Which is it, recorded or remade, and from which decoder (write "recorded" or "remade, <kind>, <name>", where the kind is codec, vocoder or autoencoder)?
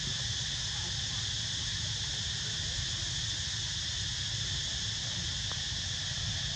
recorded